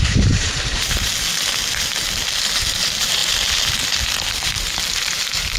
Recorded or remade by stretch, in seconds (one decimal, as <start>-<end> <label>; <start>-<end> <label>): 0.0-1.1 remade; 1.1-2.6 recorded; 2.6-5.6 remade